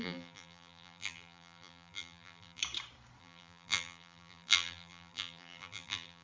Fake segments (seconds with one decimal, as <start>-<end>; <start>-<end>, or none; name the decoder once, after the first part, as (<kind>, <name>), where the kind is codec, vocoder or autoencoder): 0.0-2.6 (vocoder, BigVGAN v2); 3.2-6.2